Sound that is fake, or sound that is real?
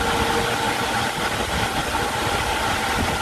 real